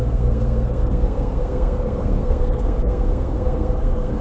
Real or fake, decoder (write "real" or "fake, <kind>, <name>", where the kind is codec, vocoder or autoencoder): fake, codec, SNAC